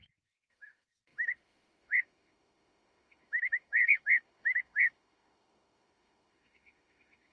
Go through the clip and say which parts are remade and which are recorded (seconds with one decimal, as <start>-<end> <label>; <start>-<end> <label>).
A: 0.0-7.3 remade